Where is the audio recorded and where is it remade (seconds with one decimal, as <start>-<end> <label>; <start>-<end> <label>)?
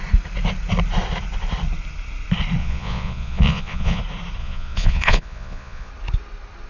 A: 0.0-2.6 recorded; 2.6-4.0 remade; 4.0-4.4 recorded; 4.4-5.9 remade; 5.9-6.7 recorded